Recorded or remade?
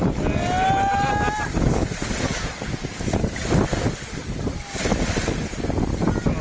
recorded